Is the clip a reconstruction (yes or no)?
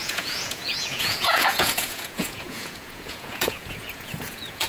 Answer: yes